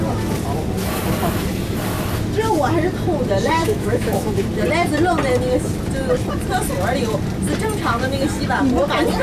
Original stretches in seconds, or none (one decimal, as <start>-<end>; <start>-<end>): 0.0-3.4; 4.3-9.2